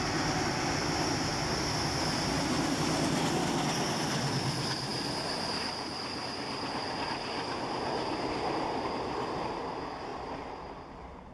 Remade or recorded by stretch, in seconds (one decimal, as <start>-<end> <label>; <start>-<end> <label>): 0.0-11.3 recorded